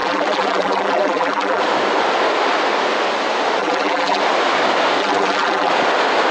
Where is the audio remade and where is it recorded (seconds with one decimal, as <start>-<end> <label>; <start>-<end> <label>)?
0.0-1.6 remade; 1.6-3.6 recorded; 3.6-4.2 remade; 4.2-5.0 recorded; 5.0-5.7 remade; 5.7-6.3 recorded